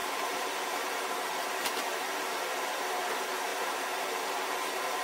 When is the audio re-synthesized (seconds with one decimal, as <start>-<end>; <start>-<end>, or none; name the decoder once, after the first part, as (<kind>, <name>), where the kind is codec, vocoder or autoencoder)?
0.0-5.0 (vocoder, BigVGAN v2)